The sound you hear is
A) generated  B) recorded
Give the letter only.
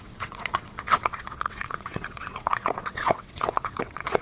A